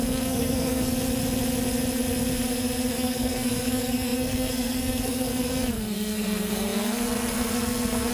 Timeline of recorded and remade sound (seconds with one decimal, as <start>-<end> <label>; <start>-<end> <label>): 0.0-0.9 remade; 0.9-2.9 recorded; 2.9-8.1 remade